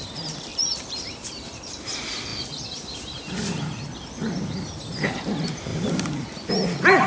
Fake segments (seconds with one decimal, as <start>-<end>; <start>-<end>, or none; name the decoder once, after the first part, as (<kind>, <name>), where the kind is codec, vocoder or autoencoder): 0.5-1.9 (vocoder, BigVGAN v2); 5.7-6.5